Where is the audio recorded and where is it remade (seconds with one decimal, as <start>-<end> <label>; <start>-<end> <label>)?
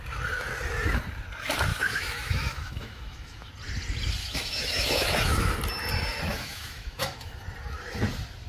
0.0-1.7 recorded; 1.7-3.5 remade; 3.5-4.2 recorded; 4.2-5.5 remade; 5.5-6.3 recorded; 6.3-7.4 remade; 7.4-8.5 recorded